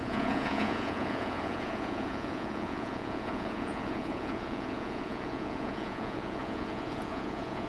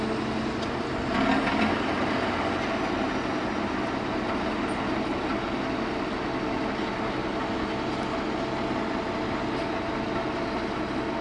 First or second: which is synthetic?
first